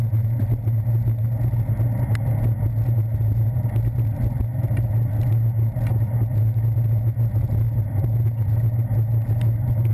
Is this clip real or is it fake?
real